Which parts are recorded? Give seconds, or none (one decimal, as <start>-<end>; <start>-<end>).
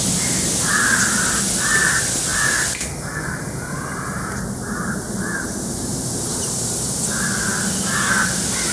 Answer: 0.0-5.9; 7.0-8.7